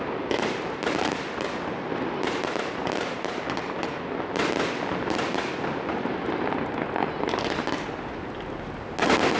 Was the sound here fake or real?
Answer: real